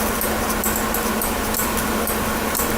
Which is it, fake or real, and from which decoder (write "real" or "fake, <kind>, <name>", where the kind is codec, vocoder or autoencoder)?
real